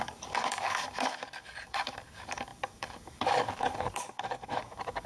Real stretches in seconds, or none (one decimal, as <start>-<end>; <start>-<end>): none

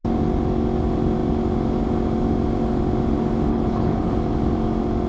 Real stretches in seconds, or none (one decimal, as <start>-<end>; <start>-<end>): 0.0-3.5; 4.1-5.1

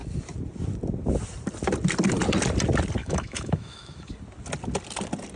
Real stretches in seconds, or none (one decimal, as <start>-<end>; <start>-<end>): 0.0-3.0; 4.1-5.4

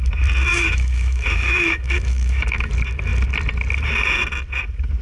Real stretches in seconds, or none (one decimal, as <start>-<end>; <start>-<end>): 0.0-0.5; 2.7-5.0

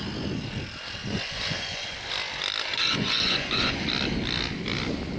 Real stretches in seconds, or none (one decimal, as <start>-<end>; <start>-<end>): 0.0-1.0; 2.1-2.7; 3.9-5.2